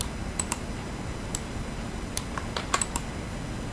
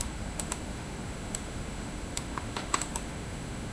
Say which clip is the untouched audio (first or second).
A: first